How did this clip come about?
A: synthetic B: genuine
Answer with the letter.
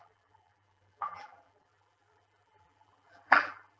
A